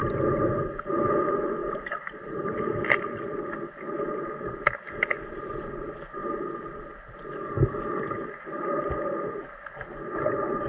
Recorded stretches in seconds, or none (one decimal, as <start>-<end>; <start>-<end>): 0.0-1.6; 3.1-10.7